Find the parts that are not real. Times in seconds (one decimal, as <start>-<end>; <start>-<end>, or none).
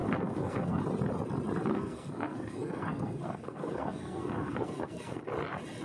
0.0-0.8; 1.7-5.2